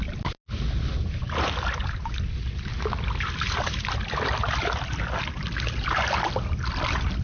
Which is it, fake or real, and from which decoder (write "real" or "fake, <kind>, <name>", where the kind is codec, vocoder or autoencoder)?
real